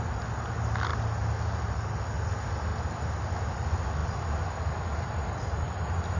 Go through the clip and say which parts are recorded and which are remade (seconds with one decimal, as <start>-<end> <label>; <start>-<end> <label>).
0.0-6.2 recorded